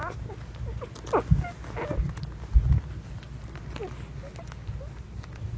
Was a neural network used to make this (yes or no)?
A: no